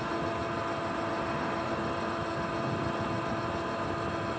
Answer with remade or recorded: recorded